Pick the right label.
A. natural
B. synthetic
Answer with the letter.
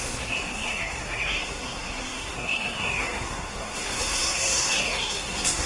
B